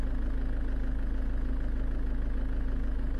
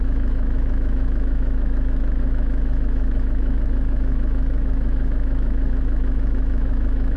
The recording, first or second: first